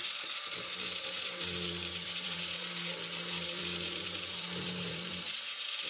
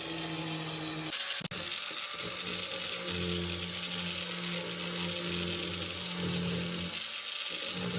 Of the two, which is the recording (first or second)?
second